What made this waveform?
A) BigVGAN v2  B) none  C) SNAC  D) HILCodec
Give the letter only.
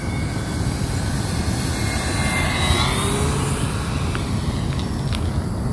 B